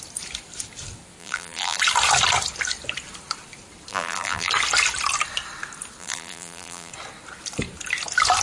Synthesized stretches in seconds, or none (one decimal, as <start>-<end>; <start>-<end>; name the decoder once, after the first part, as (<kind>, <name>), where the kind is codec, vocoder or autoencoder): 1.2-1.8 (vocoder, BigVGAN v2); 3.9-4.5; 6.0-6.9